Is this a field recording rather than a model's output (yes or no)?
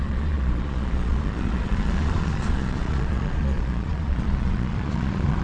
no